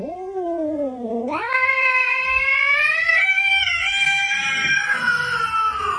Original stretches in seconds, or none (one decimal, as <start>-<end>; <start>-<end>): 0.0-6.0